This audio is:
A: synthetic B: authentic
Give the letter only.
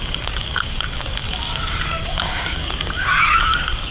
A